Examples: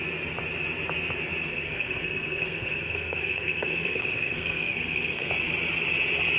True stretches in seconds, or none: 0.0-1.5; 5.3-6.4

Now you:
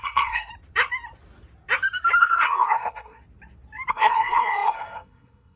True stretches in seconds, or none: 0.5-2.2; 3.2-3.9

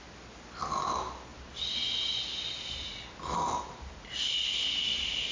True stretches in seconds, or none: 0.0-5.3